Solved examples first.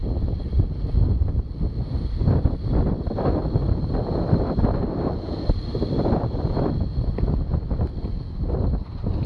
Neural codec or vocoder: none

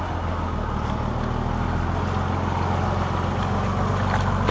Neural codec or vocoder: none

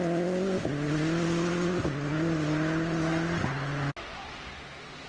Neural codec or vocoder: none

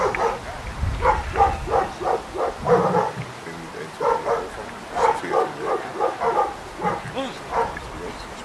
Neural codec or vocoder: none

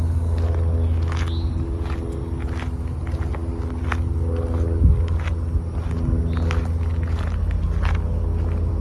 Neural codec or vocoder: none